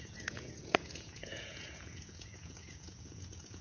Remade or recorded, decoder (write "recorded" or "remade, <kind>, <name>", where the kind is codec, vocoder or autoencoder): remade, vocoder, Vocos